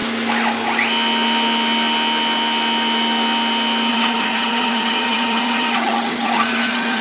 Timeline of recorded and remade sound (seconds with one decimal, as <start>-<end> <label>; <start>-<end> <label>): 0.0-3.9 recorded; 3.9-7.0 remade